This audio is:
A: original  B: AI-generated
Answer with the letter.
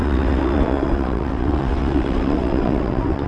B